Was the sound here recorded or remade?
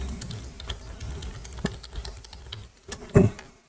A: recorded